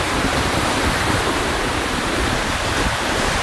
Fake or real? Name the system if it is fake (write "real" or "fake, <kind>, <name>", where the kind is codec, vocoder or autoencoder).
fake, vocoder, BigVGAN v2